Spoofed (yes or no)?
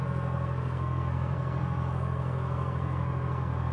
yes